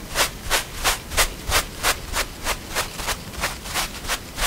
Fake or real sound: fake